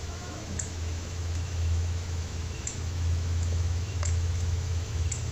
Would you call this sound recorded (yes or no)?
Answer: no